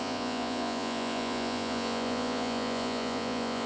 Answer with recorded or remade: remade